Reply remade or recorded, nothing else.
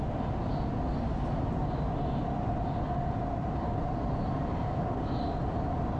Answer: recorded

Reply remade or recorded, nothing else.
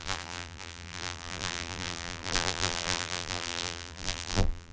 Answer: remade